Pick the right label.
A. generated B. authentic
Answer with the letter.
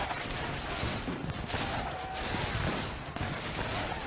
B